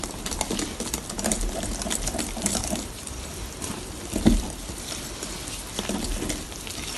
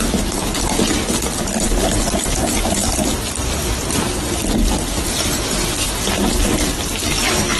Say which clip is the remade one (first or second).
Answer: first